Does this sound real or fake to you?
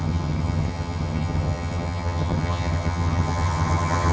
fake